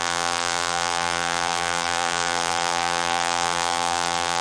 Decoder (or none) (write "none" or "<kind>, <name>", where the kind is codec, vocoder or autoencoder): vocoder, BigVGAN v2